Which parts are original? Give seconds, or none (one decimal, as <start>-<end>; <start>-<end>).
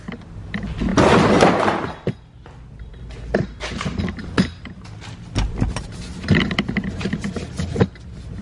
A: 0.0-8.4